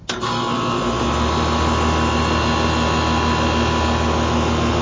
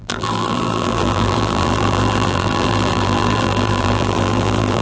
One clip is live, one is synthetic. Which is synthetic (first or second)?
second